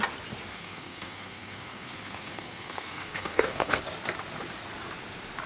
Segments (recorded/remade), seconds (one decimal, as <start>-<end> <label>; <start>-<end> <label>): 0.0-0.5 recorded; 0.5-3.8 remade; 3.8-5.5 recorded